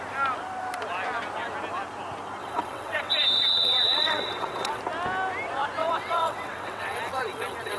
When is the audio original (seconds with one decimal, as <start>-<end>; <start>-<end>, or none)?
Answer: 0.0-2.4; 4.8-5.8